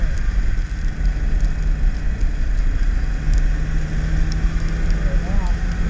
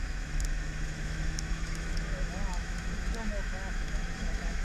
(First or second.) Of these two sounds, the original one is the first